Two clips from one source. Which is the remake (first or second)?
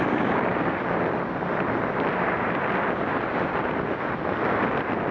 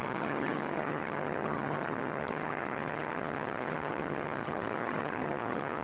second